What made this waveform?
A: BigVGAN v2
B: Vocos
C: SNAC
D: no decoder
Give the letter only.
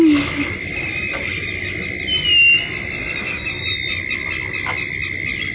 D